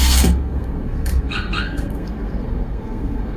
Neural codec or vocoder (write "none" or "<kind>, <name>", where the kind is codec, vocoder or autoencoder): codec, SNAC